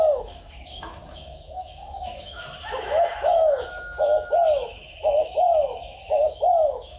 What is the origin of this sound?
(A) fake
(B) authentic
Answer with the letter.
A